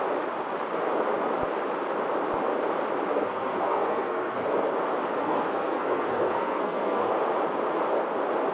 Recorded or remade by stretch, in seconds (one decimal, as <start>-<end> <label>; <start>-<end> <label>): 0.0-3.1 recorded; 3.1-4.7 remade; 4.7-5.2 recorded; 5.2-7.1 remade; 7.1-8.5 recorded